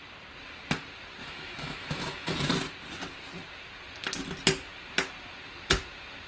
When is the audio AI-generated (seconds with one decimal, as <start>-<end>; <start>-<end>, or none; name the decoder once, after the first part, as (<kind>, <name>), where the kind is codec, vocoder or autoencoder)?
1.2-2.5 (autoencoder, DAC-VAE)